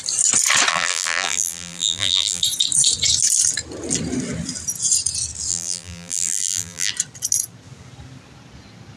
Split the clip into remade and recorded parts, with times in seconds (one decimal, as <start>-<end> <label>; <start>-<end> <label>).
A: 0.0-0.7 recorded; 0.7-2.4 remade; 2.4-5.5 recorded; 5.5-6.9 remade; 6.9-9.0 recorded